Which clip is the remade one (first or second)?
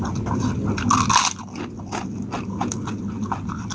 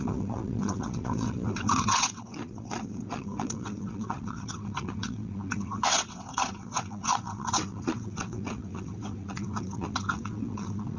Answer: second